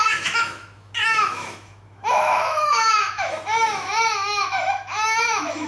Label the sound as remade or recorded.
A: remade